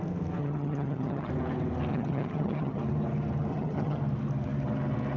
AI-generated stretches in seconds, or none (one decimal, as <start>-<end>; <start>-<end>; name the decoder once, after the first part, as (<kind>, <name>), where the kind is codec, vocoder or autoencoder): 0.4-1.3 (vocoder, HiFi-GAN); 1.9-2.8; 3.5-4.0